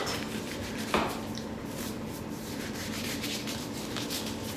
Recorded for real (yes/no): yes